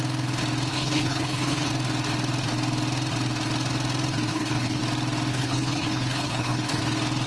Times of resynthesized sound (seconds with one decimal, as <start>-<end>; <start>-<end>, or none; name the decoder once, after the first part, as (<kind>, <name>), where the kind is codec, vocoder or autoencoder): 0.7-1.7 (codec, HILCodec); 4.3-4.8; 5.3-6.8

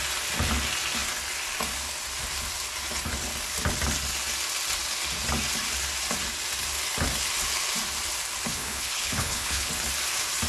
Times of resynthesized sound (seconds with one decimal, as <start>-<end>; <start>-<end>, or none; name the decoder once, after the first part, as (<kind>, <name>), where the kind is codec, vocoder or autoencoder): 8.5-9.7 (codec, HILCodec)